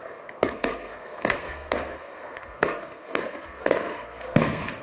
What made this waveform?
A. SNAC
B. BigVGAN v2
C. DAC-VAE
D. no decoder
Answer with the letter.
A